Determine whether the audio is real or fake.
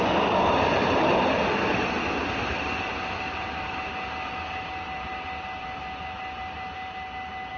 real